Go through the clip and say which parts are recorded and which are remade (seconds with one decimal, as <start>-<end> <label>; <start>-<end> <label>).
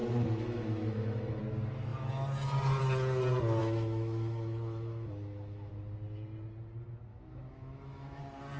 0.0-1.4 remade; 1.4-3.6 recorded; 3.6-5.7 remade; 5.7-7.1 recorded; 7.1-8.2 remade; 8.2-8.6 recorded